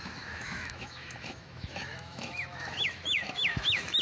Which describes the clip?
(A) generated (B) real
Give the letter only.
A